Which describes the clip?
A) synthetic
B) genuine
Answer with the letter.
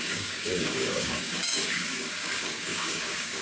A